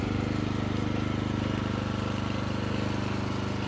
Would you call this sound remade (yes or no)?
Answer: no